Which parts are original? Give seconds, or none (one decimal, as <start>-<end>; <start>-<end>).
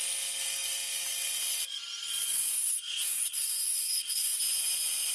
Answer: 0.0-2.5; 4.4-5.1